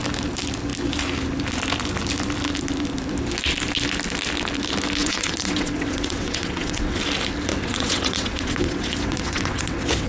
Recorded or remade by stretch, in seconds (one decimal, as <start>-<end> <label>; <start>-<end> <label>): 0.0-5.0 recorded; 5.0-7.0 remade; 7.0-7.5 recorded; 7.5-10.1 remade

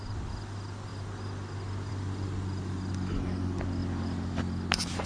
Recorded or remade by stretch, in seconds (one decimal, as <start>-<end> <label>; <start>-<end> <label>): 0.0-5.1 recorded

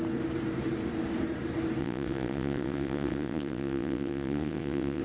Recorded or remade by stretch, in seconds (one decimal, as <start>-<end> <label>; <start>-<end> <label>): 0.0-1.8 recorded; 1.8-5.0 remade

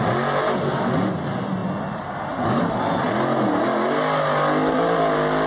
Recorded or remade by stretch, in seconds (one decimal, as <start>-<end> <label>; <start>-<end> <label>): 0.0-5.5 recorded

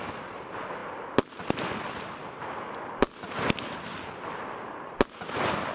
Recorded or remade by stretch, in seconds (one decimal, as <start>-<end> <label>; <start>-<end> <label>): 0.0-5.7 recorded

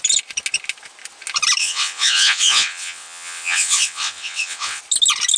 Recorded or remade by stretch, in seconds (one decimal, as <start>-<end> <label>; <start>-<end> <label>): 0.0-1.6 recorded; 1.6-4.8 remade; 4.8-5.4 recorded

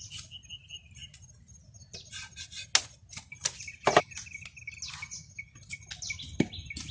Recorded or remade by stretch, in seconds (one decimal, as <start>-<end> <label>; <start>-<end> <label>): 0.0-6.9 recorded